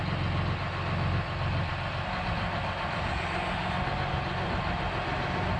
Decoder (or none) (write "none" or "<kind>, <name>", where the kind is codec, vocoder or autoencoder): none